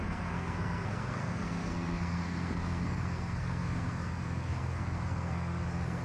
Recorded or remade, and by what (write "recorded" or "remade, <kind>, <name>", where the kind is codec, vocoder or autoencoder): remade, codec, SNAC